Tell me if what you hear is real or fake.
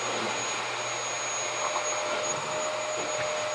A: real